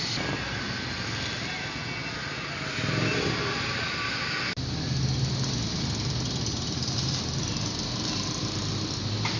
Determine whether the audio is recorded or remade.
recorded